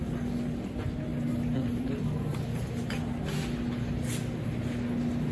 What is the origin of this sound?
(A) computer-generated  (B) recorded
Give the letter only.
B